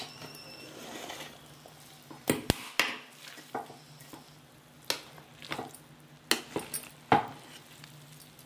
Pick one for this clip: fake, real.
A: real